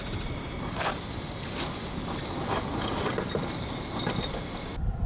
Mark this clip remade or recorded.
recorded